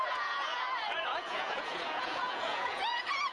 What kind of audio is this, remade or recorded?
remade